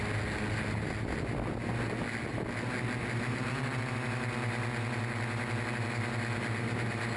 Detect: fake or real real